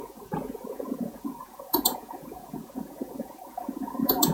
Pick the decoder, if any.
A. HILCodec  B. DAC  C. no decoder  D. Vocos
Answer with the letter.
D